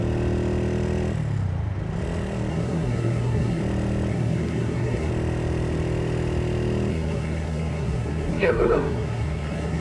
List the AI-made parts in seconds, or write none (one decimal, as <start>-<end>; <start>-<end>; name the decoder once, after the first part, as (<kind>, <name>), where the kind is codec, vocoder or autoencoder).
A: 2.5-3.6 (codec, SNAC); 4.1-5.1; 6.9-9.8